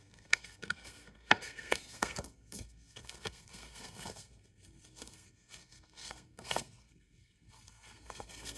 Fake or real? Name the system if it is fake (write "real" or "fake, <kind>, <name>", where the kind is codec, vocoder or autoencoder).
fake, codec, SNAC